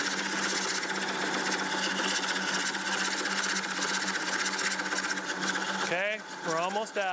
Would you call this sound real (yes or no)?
yes